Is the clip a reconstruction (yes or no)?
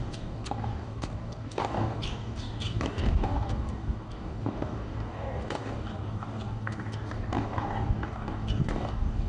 yes